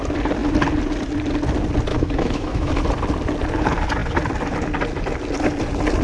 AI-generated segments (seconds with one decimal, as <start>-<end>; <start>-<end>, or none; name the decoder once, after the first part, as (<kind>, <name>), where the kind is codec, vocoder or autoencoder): 1.9-2.7 (autoencoder, DAC-VAE)